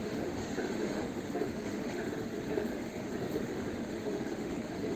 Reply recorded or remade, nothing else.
remade